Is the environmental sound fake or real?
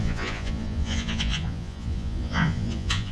fake